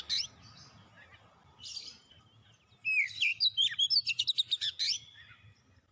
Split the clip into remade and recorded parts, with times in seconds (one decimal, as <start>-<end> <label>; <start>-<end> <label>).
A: 0.0-5.9 recorded